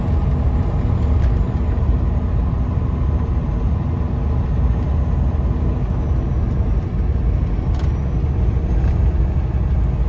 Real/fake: real